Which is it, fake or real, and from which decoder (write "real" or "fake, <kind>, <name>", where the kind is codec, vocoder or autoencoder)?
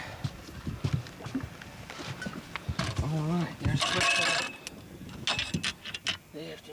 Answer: real